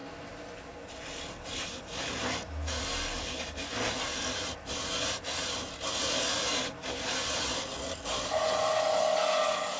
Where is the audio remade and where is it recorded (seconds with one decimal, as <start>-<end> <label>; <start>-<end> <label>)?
0.0-4.7 remade; 4.7-9.8 recorded